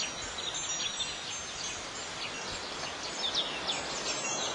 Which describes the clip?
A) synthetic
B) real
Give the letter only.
B